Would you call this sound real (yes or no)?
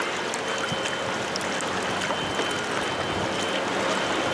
yes